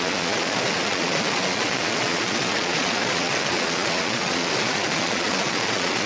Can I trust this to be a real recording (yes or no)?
no